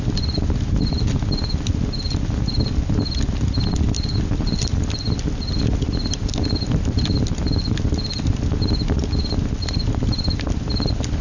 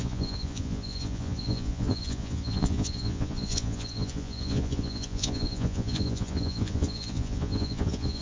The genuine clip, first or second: first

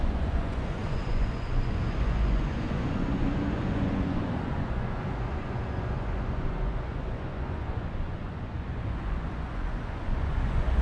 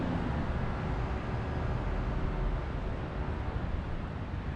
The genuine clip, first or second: second